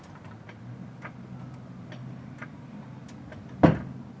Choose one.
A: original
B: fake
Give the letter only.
A